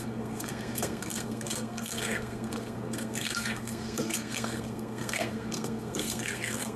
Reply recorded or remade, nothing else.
remade